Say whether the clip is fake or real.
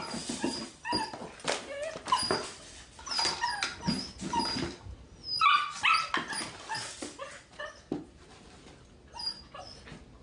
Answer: real